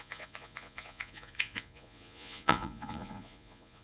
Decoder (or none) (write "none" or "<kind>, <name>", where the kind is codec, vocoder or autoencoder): vocoder, Vocos